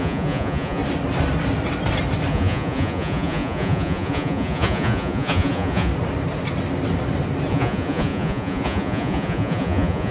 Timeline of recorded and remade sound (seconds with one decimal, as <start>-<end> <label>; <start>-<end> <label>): 0.0-0.8 remade; 0.8-2.3 recorded; 2.3-5.9 remade; 5.9-7.5 recorded; 7.5-10.1 remade